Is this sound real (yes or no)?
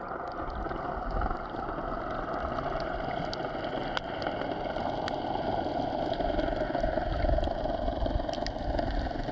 yes